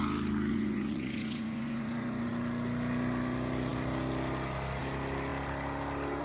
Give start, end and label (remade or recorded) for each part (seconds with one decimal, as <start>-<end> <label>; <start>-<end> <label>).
0.0-0.5 recorded; 0.5-2.3 remade; 2.3-6.2 recorded